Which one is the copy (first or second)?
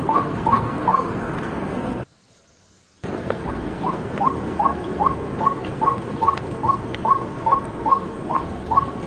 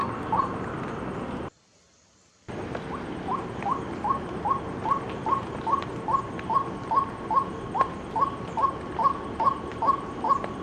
first